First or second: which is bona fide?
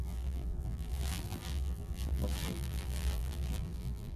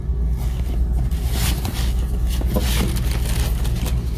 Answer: second